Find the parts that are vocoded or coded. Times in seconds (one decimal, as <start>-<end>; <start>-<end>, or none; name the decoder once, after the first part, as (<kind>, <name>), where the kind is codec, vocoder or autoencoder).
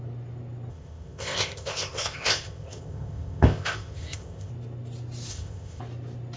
0.7-4.5 (codec, ZipCodec); 5.3-5.8